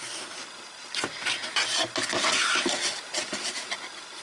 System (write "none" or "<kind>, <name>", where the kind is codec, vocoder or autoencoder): none